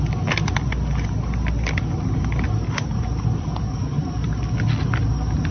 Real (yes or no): yes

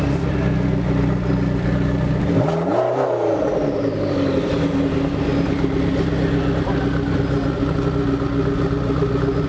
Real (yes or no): yes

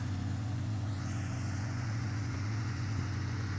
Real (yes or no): no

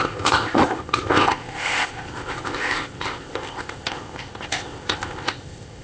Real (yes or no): no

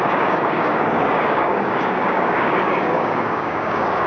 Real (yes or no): no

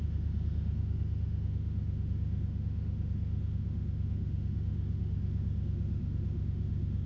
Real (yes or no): no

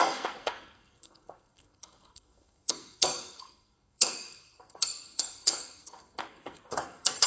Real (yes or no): no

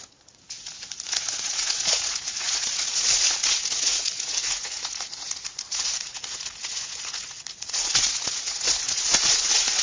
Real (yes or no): no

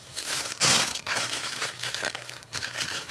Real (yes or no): no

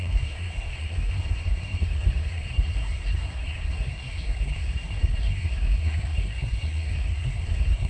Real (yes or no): no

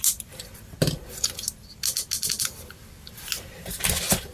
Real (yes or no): yes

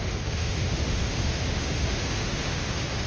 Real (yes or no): no